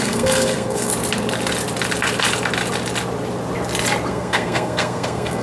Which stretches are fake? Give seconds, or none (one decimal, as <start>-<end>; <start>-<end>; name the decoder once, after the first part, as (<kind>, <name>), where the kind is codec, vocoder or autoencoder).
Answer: 0.0-0.9 (codec, SNAC); 4.1-5.4